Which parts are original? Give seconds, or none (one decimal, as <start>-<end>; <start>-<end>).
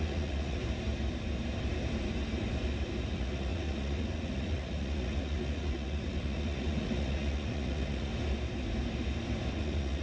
0.6-3.1; 8.1-9.5